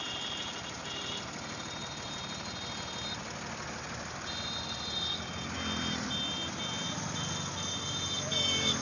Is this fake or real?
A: real